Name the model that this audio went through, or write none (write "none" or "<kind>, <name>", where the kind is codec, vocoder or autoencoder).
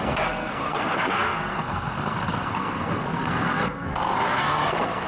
codec, SNAC